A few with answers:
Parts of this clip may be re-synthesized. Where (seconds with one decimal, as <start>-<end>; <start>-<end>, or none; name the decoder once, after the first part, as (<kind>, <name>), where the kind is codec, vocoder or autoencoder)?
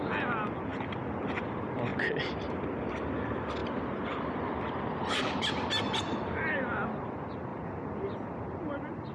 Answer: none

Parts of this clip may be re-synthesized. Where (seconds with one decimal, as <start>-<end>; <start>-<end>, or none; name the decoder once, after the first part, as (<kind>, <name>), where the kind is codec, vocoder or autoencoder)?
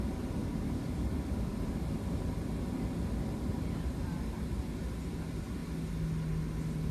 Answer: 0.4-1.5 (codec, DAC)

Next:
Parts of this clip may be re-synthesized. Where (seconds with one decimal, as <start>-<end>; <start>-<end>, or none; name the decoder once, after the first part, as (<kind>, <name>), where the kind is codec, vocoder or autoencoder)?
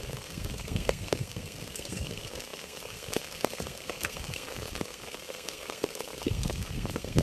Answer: 0.0-7.2 (codec, SNAC)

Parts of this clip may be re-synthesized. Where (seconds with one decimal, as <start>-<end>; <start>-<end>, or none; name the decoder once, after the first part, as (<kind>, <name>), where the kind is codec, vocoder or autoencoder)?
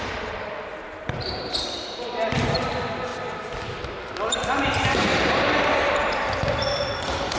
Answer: 0.0-3.1 (vocoder, BigVGAN v2); 4.3-7.4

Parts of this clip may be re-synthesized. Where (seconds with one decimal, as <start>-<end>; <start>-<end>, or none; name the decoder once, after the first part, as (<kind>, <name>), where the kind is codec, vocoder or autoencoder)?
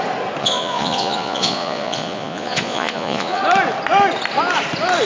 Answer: 0.4-3.4 (vocoder, Vocos)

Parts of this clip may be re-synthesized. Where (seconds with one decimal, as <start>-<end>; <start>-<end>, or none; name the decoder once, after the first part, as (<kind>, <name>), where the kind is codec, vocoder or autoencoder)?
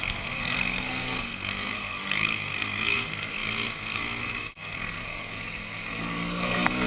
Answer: 0.0-6.9 (codec, SNAC)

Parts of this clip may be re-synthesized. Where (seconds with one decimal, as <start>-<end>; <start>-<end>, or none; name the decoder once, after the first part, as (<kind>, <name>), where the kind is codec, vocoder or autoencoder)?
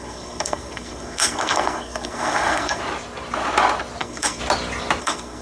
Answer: 0.0-2.8 (codec, SNAC); 4.0-4.4; 5.0-5.4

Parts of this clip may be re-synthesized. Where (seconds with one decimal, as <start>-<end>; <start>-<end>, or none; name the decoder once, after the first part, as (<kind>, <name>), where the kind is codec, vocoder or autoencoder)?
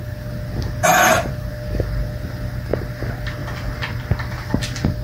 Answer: 0.9-1.5 (vocoder, BigVGAN v2)